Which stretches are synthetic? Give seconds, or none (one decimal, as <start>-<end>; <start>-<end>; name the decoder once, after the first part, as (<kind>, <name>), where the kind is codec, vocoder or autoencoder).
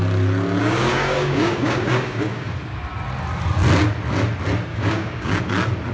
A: 0.6-2.5 (codec, DAC); 4.7-5.4